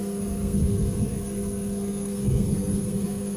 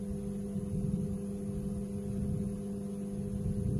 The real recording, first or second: second